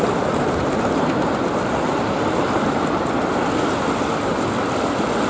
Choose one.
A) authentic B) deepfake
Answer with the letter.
A